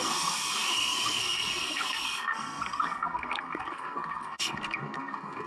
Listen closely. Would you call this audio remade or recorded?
remade